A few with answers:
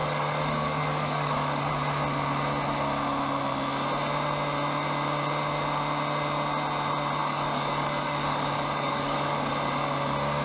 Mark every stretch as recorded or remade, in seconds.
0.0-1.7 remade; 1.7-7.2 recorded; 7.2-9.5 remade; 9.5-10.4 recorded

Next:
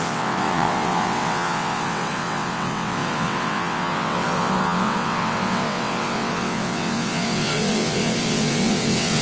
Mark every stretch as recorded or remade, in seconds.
0.0-9.2 remade

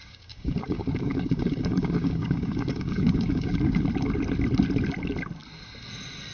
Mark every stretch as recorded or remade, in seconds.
0.0-3.8 remade; 3.8-6.3 recorded